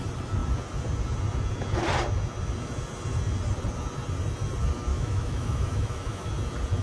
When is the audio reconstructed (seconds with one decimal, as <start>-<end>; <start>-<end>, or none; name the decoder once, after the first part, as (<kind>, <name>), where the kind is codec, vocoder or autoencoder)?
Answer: 4.9-6.3 (autoencoder, DAC-VAE)